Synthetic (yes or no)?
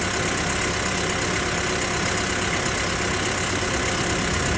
no